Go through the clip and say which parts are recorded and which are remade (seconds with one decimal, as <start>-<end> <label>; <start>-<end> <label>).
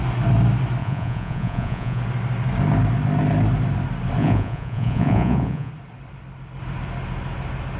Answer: 0.0-0.8 recorded; 0.8-2.0 remade; 2.0-4.2 recorded; 4.2-5.7 remade; 5.7-7.8 recorded